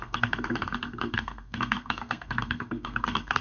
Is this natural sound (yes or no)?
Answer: no